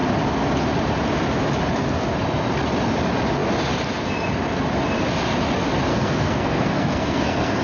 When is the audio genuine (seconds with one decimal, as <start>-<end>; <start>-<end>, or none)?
0.0-5.9